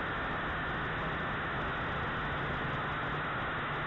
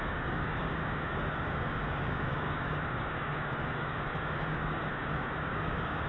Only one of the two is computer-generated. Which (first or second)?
second